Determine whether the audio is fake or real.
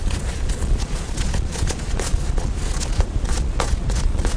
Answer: fake